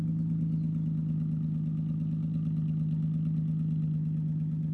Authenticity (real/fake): real